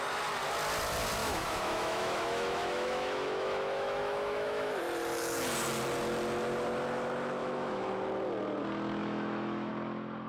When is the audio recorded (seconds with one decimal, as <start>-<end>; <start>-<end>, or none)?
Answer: 0.0-1.2; 4.7-7.4; 7.9-9.0; 9.7-10.3